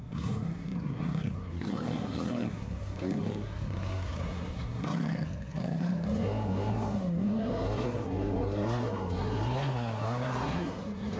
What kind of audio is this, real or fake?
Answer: fake